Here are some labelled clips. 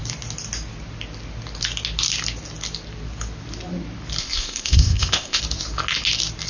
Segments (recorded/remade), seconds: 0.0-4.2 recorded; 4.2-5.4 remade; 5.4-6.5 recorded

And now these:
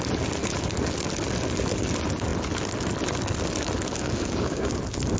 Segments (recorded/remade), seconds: 0.0-3.9 recorded; 3.9-4.7 remade; 4.7-5.2 recorded

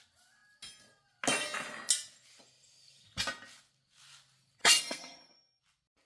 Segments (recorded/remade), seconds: 0.0-4.6 recorded; 4.6-5.6 remade; 5.6-6.1 recorded

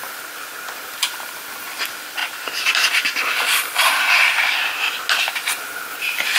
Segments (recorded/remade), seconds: 0.0-6.4 recorded

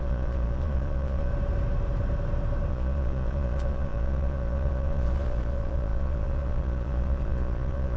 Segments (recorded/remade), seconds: 0.0-1.3 remade; 1.3-2.7 recorded; 2.7-8.0 remade